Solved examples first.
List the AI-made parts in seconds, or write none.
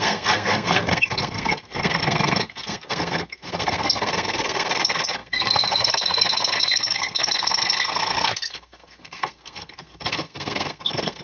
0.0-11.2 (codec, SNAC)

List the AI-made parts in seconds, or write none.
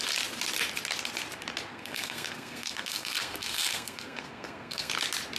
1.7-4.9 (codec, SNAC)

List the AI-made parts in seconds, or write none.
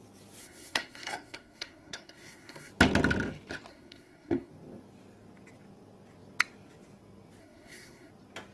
0.4-2.7 (codec, SNAC); 3.7-4.5; 7.4-8.1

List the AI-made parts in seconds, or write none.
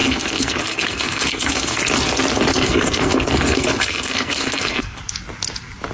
0.0-1.8 (codec, SNAC); 2.5-5.0